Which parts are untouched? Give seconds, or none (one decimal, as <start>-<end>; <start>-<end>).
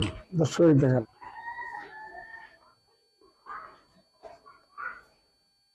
0.0-5.7